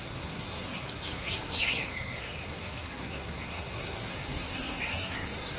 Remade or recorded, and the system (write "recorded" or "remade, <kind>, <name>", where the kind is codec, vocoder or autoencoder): remade, codec, SNAC